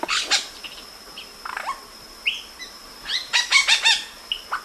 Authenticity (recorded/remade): recorded